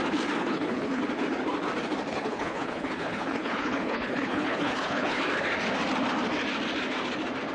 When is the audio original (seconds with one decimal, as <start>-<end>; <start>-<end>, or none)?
0.0-0.4; 1.0-2.1; 5.2-7.5